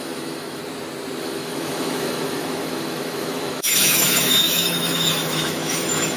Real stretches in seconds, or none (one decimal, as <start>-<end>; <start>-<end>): 0.6-1.2